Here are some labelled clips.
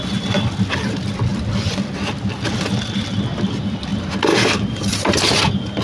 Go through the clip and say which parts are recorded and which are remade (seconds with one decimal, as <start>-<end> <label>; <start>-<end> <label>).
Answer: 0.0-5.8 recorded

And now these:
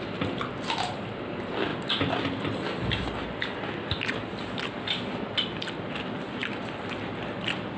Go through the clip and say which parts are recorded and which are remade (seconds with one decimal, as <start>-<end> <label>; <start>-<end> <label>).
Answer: 0.0-7.8 recorded

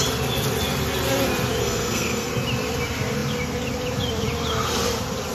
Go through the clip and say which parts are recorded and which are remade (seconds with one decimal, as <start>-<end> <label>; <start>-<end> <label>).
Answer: 0.0-1.6 recorded; 1.6-2.3 remade; 2.3-5.3 recorded

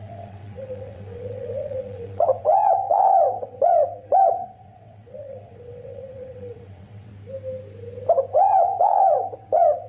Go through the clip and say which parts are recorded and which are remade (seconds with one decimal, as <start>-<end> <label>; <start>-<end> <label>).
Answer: 0.0-7.1 remade; 7.1-8.3 recorded; 8.3-9.9 remade

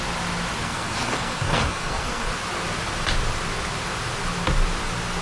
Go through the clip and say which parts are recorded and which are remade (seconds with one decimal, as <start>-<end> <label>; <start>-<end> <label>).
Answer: 0.0-0.6 recorded; 0.6-2.3 remade; 2.3-5.2 recorded